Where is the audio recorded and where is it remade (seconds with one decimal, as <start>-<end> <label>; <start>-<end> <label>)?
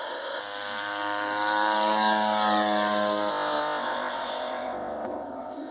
0.0-0.4 remade; 0.4-3.3 recorded; 3.3-5.7 remade